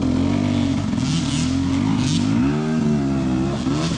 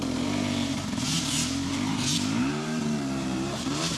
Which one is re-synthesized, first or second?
second